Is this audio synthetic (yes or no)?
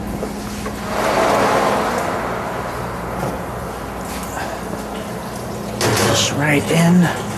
no